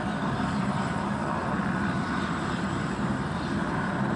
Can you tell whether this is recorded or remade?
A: remade